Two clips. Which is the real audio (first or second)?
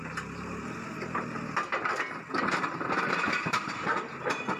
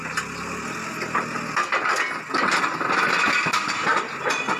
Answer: second